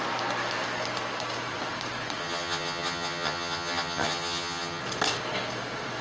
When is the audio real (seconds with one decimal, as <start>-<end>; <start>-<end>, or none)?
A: 0.0-2.2; 4.8-6.0